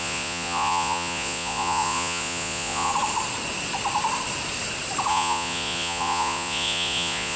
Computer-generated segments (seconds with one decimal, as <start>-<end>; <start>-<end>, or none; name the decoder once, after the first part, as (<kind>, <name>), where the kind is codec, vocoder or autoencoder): 0.0-2.9 (vocoder, Vocos); 5.1-7.4